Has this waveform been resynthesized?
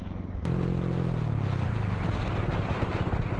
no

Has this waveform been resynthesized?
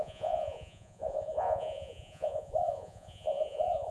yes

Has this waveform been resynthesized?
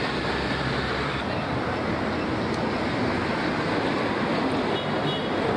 no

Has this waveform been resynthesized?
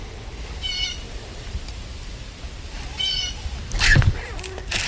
no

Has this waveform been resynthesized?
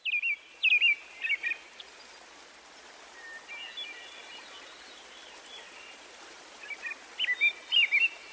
no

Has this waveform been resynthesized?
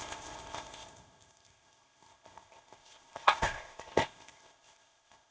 yes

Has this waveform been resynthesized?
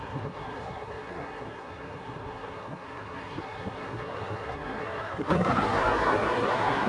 yes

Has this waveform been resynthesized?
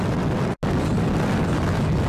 no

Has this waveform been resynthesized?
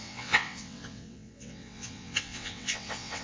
yes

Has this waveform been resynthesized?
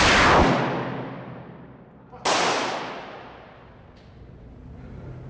no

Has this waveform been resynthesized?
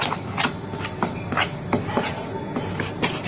no